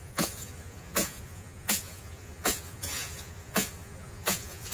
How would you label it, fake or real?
fake